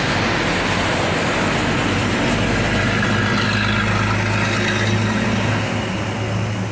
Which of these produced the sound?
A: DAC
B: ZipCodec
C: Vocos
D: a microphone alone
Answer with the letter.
D